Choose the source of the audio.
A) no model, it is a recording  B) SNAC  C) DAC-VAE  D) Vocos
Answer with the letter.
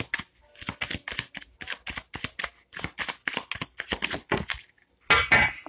A